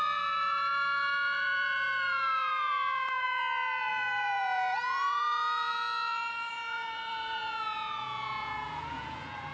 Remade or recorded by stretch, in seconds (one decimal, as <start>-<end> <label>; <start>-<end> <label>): 0.0-9.5 remade